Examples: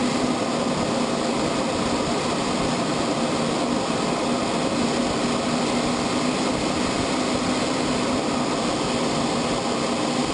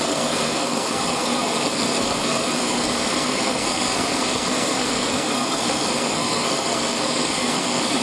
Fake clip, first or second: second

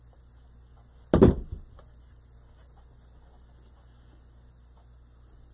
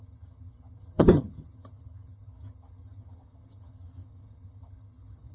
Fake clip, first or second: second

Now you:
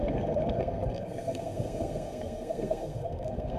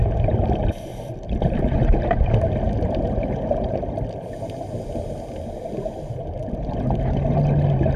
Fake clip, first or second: first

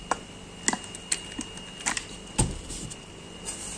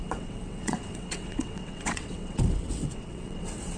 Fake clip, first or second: second